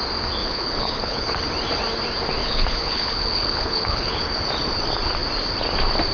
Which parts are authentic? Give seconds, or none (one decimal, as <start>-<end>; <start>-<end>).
0.0-0.4; 1.4-2.4; 4.2-6.1